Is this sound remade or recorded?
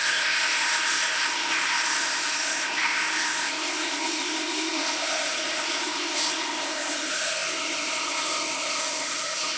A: remade